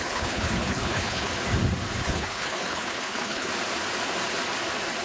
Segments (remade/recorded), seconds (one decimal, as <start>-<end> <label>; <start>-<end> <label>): 0.0-1.3 remade; 1.3-2.0 recorded; 2.0-3.5 remade; 3.5-5.0 recorded